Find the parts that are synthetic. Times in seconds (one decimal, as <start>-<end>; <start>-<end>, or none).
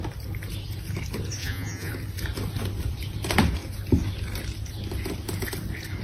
1.4-1.9